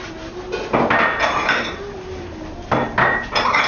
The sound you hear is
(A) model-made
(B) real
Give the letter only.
B